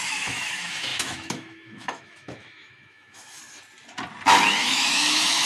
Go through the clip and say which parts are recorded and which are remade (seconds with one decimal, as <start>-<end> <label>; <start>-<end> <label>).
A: 0.0-3.4 remade; 3.4-4.6 recorded; 4.6-5.5 remade